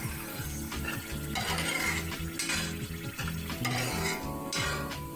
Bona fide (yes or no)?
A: yes